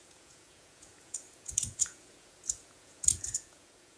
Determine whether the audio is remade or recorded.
remade